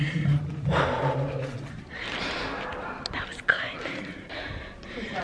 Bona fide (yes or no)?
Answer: yes